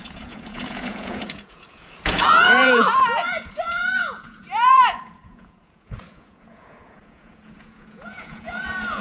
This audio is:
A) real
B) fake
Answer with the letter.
B